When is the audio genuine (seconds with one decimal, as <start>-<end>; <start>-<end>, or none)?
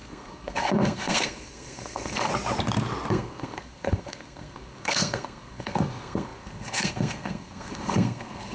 2.3-3.1